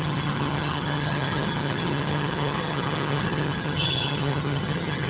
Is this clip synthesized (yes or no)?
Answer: yes